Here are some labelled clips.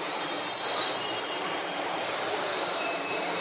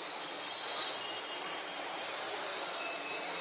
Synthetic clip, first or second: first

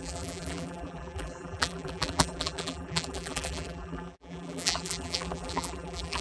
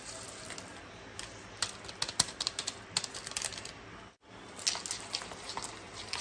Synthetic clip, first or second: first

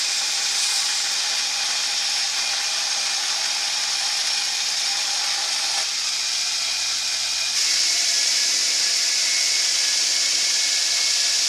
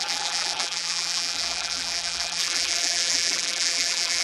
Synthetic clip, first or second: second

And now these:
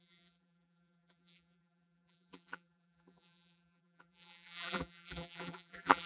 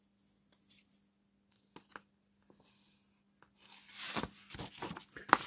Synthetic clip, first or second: first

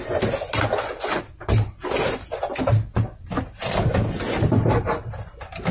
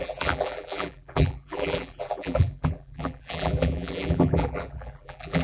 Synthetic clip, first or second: second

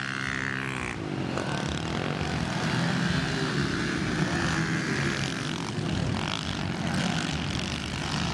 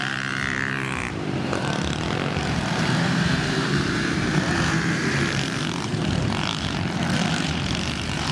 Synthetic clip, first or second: second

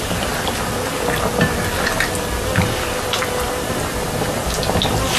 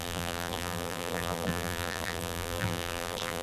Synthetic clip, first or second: second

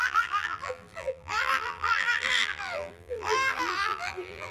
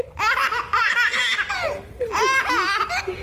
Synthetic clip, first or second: first